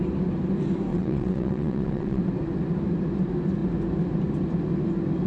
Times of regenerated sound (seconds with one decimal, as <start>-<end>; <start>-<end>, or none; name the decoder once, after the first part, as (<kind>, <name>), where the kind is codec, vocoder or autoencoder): 0.9-2.2 (vocoder, WaveNeXt)